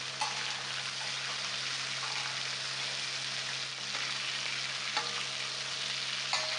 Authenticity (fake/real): real